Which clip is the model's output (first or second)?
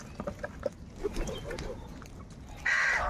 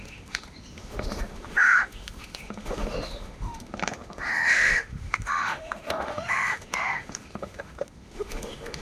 second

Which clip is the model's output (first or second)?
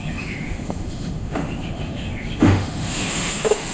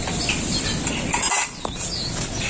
first